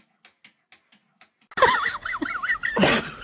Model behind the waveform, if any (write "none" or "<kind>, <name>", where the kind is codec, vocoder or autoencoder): none